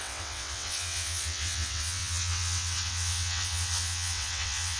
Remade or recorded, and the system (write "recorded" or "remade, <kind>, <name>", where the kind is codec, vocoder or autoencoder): remade, vocoder, WaveNeXt